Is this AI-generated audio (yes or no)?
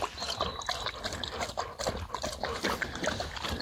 no